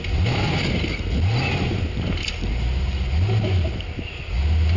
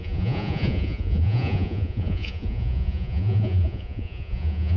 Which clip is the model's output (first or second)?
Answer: second